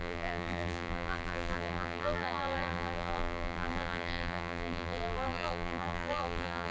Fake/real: fake